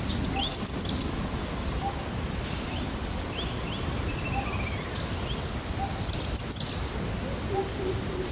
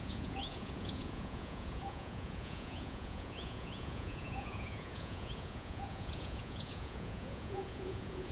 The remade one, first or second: second